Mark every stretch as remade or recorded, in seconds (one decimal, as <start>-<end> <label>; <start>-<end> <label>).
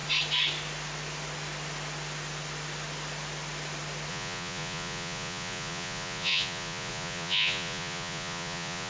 0.0-4.1 recorded; 4.1-8.9 remade